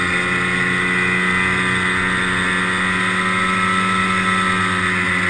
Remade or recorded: recorded